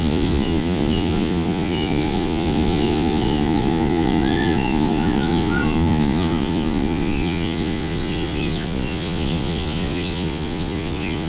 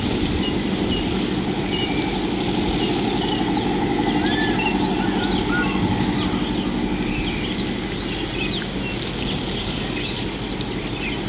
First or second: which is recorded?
second